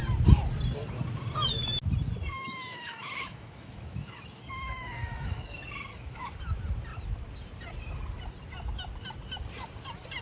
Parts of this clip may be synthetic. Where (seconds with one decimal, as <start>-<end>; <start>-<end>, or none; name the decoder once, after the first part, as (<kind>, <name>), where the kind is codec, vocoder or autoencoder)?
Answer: 2.3-6.3 (autoencoder, DAC-VAE)